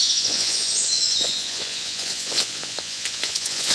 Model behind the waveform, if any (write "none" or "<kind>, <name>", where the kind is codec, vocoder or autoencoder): vocoder, Vocos